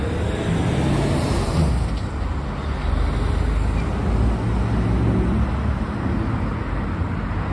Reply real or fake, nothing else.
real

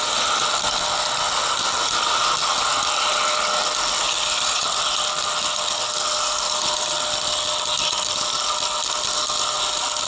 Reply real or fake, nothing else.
real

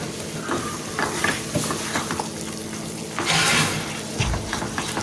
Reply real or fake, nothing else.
real